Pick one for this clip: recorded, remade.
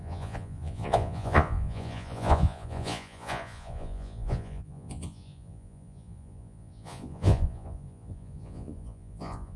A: remade